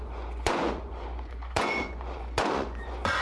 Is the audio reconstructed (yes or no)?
yes